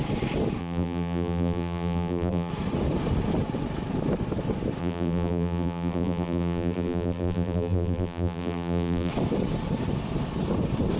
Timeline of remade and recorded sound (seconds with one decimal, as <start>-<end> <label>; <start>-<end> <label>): 0.0-0.6 recorded; 0.6-2.5 remade; 2.5-4.8 recorded; 4.8-9.1 remade; 9.1-11.0 recorded